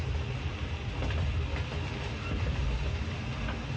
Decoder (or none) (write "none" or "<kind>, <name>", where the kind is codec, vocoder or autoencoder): none